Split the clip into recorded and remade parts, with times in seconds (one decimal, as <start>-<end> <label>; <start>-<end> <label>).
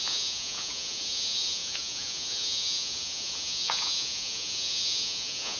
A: 0.0-5.6 remade